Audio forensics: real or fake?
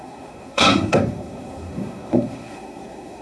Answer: fake